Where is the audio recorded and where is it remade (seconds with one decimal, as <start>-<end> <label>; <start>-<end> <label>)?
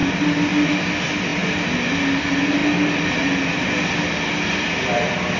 0.0-5.4 recorded